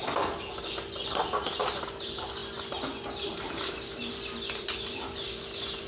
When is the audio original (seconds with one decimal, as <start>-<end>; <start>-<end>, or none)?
0.0-5.9